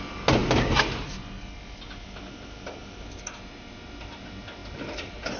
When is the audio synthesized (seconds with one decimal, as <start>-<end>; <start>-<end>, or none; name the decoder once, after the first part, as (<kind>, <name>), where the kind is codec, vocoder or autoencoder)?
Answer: none